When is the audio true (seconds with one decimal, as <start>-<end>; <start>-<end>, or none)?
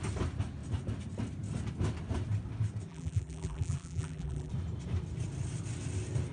0.0-2.9; 4.5-6.3